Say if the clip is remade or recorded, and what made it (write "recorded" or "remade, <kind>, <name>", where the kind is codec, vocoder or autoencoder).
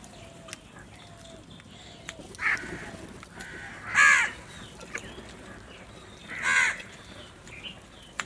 recorded